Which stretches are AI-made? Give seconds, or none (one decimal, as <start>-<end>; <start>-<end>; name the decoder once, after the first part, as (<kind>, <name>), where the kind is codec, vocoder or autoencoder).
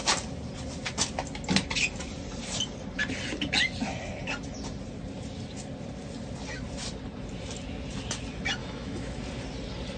8.6-9.2 (autoencoder, DAC-VAE)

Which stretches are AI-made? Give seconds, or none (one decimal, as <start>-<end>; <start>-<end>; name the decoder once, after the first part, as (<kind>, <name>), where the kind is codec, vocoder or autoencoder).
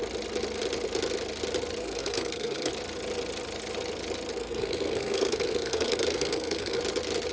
1.8-2.7 (codec, SNAC); 4.4-6.8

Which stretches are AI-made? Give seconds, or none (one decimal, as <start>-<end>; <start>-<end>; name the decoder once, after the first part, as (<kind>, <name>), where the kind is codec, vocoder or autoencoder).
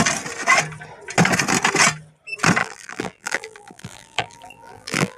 2.6-5.2 (vocoder, BigVGAN v2)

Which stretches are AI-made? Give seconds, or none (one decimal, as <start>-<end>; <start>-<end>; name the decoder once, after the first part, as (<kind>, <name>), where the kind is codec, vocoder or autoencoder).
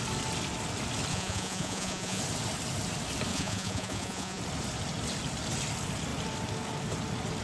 1.1-2.2 (vocoder, Vocos); 3.3-4.4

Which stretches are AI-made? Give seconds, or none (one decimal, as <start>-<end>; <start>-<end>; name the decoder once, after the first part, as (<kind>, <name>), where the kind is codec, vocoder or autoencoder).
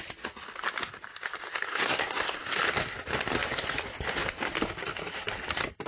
1.7-2.6 (codec, SNAC)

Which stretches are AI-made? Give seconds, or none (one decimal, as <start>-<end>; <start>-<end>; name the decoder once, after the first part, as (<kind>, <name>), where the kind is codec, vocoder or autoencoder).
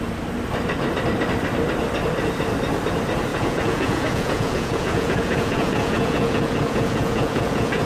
3.3-7.8 (vocoder, Vocos)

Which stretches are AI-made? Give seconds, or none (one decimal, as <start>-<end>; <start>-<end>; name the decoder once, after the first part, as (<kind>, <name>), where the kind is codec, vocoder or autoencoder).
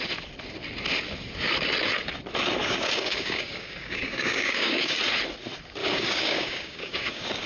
2.6-5.0 (codec, DAC); 5.8-7.5